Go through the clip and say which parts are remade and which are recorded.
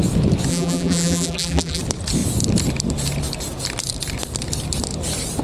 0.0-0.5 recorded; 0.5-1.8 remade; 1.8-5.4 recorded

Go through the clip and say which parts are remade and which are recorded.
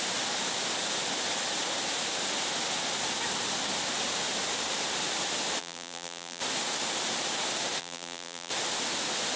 0.0-5.6 recorded; 5.6-6.4 remade; 6.4-7.8 recorded; 7.8-8.5 remade; 8.5-9.4 recorded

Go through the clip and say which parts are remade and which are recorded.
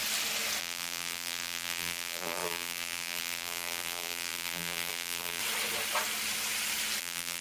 0.0-0.6 recorded; 0.6-5.4 remade; 5.4-7.0 recorded; 7.0-7.4 remade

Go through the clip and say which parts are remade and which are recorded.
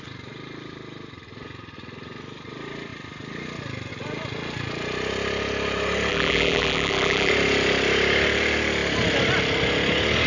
0.0-6.1 recorded; 6.1-7.3 remade; 7.3-10.3 recorded